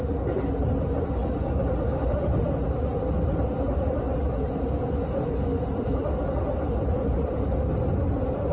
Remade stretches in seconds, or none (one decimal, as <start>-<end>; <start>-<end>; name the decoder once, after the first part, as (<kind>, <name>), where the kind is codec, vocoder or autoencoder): none